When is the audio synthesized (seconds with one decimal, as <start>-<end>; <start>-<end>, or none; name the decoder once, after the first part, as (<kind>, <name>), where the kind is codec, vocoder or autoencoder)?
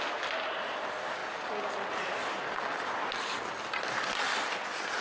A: none